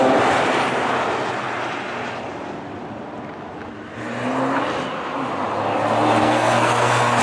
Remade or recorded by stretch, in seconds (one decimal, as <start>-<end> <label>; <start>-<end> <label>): 0.0-6.2 recorded; 6.2-7.2 remade